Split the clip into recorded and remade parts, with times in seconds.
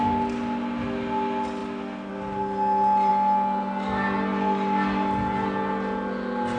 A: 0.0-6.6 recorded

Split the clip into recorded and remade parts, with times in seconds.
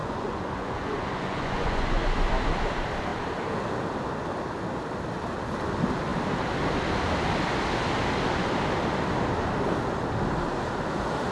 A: 0.0-2.3 remade; 2.3-11.3 recorded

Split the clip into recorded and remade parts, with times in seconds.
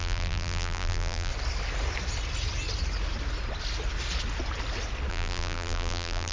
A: 0.0-1.3 remade; 1.3-5.1 recorded; 5.1-6.3 remade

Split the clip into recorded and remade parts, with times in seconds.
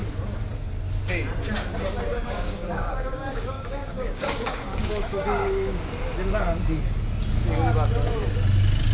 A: 0.0-2.1 recorded; 2.1-5.9 remade; 5.9-8.9 recorded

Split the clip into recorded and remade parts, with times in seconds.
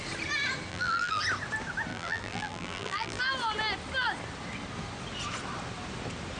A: 0.0-0.7 recorded; 0.7-1.2 remade; 1.2-1.9 recorded; 1.9-3.2 remade; 3.2-6.4 recorded